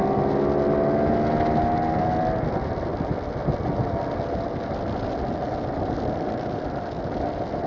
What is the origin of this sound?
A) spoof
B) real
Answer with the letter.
B